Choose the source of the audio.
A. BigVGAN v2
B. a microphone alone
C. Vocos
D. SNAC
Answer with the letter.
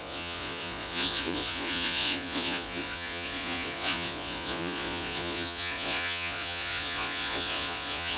C